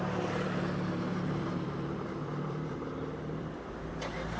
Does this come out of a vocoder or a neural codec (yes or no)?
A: yes